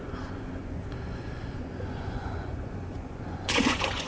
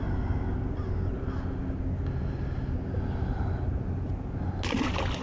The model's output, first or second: first